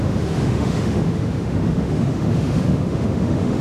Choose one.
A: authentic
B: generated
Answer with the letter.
B